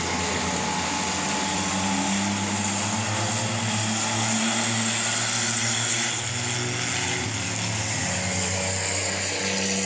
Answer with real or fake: real